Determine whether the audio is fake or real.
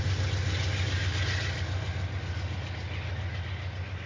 real